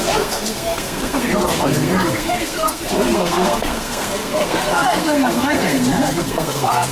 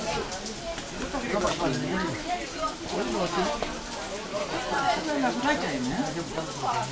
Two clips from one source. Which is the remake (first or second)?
first